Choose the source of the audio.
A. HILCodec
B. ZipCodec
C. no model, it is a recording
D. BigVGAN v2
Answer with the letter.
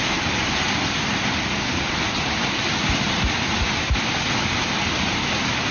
C